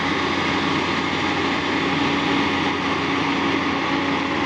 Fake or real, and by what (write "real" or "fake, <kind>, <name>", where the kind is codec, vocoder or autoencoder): real